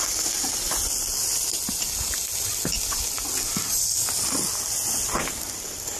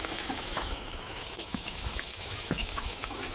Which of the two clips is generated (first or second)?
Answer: second